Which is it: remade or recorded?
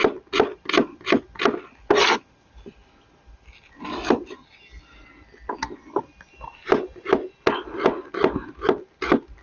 recorded